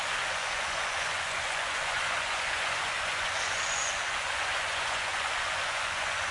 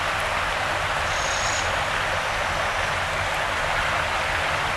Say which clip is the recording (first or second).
second